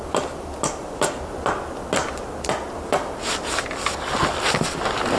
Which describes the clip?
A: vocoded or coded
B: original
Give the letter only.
B